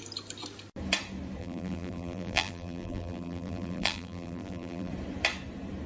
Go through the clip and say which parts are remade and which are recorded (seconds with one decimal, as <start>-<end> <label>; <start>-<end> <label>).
0.0-1.4 recorded; 1.4-4.9 remade; 4.9-5.9 recorded